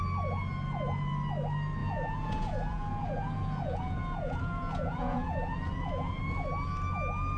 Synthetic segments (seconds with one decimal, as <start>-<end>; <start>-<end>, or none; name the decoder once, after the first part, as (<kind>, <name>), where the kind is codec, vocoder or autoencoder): 1.8-6.2 (vocoder, Vocos)